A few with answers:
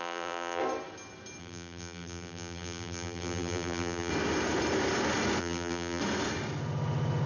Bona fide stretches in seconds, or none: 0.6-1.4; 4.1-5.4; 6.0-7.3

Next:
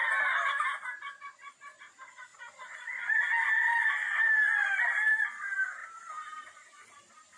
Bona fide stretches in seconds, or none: 0.5-4.6; 5.2-5.8; 7.0-7.4

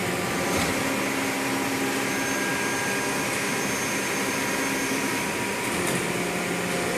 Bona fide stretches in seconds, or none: 0.0-7.0

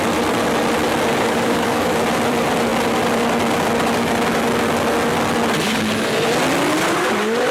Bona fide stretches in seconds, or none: 0.0-1.1; 1.9-7.5